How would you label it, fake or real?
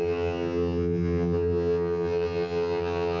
fake